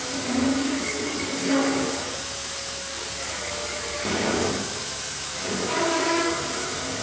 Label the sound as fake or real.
fake